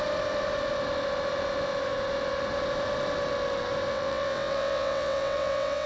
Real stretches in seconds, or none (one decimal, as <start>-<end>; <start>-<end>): 0.0-3.9